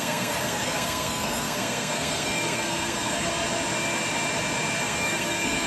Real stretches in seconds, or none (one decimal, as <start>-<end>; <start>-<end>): 3.3-4.8